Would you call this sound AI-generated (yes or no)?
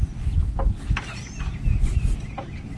no